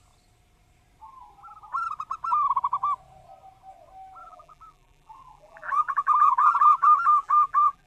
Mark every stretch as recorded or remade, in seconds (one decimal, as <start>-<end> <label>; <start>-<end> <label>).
0.0-4.2 recorded; 4.2-7.9 remade